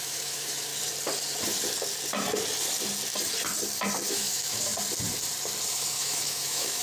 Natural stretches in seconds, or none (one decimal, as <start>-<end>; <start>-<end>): 0.7-4.1; 4.7-5.7